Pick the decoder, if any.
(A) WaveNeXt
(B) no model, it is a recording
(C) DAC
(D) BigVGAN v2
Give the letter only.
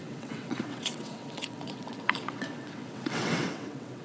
A